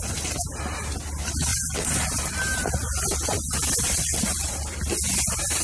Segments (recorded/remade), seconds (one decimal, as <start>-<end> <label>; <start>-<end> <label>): 0.0-1.5 recorded; 1.5-4.9 remade; 4.9-5.6 recorded